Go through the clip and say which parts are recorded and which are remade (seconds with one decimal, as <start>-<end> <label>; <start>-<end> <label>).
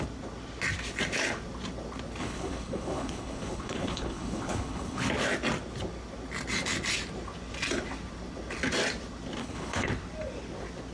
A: 0.0-2.2 recorded; 2.2-5.1 remade; 5.1-9.4 recorded; 9.4-9.9 remade; 9.9-10.9 recorded